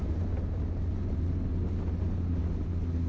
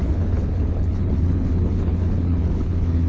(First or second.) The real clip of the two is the first